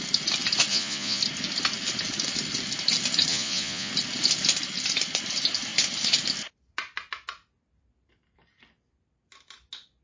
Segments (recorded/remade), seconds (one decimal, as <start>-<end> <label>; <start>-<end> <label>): 0.0-0.7 recorded; 0.7-1.2 remade; 1.2-3.3 recorded; 3.3-3.9 remade; 3.9-10.0 recorded